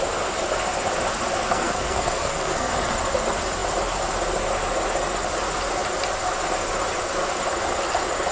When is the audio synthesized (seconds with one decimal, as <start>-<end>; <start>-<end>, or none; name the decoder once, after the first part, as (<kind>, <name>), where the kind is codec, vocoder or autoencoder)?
1.4-2.7 (codec, SNAC)